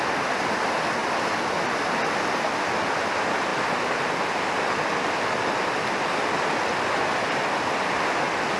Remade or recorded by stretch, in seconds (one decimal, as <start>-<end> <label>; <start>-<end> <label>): 0.0-8.6 recorded